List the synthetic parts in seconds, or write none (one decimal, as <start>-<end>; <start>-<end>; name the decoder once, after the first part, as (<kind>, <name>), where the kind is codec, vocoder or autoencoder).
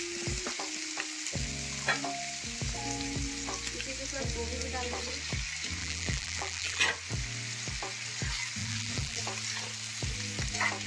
5.8-6.8 (vocoder, BigVGAN v2); 8.6-9.2